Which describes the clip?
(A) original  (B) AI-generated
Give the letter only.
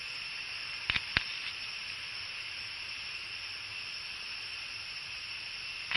A